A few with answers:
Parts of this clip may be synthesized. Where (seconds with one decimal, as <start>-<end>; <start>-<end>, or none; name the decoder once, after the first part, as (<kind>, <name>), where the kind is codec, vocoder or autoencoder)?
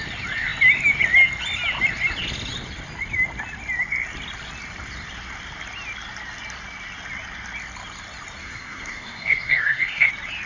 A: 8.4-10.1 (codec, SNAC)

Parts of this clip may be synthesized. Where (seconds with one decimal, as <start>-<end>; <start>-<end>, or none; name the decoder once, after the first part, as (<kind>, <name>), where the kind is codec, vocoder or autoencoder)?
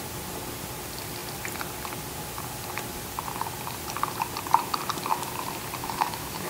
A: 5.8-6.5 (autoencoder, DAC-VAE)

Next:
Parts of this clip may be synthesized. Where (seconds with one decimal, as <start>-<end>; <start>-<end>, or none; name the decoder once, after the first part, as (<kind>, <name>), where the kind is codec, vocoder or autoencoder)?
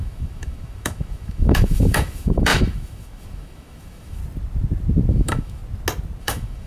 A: 0.0-4.2 (autoencoder, DAC-VAE); 5.1-5.6; 6.2-6.7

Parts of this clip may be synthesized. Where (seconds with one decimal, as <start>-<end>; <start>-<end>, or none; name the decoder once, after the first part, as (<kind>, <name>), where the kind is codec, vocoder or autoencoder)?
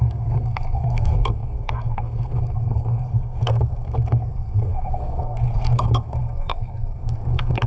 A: 0.0-7.7 (codec, SNAC)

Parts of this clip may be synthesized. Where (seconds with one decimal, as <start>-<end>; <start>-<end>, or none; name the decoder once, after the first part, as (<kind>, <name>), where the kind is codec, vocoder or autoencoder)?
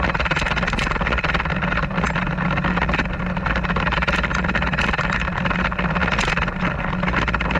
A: none